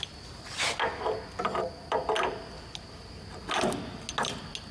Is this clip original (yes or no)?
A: yes